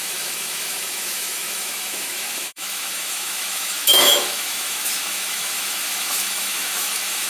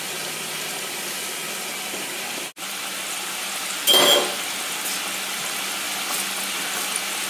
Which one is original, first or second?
second